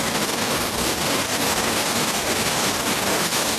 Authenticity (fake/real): fake